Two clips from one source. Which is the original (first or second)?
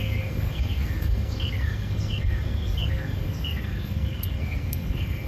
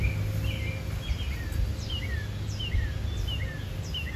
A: second